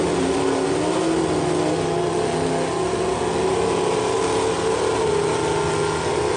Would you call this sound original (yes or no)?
yes